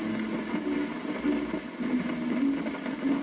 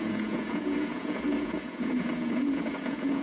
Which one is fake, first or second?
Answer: second